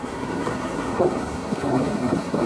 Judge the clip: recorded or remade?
remade